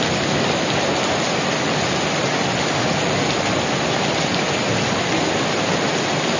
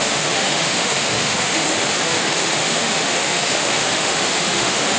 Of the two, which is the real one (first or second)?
first